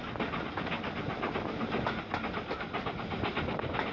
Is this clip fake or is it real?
real